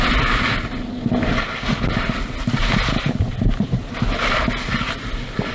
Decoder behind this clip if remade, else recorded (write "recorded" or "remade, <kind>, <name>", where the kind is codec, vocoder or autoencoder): recorded